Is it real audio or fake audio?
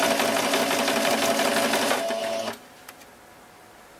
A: real